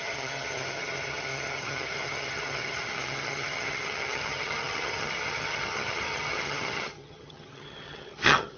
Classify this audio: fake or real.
fake